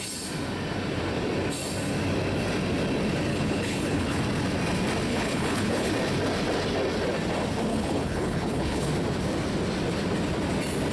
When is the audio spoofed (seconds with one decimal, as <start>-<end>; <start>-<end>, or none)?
3.3-4.2; 5.1-5.9; 7.7-8.9